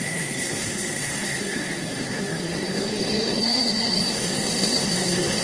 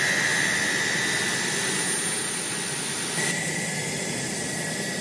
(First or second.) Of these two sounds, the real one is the second